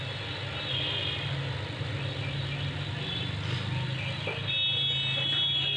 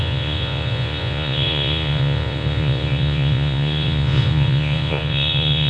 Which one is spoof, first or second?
second